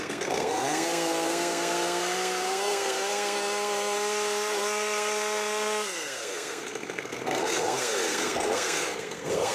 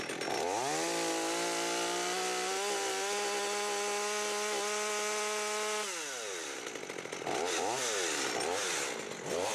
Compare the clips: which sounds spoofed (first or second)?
first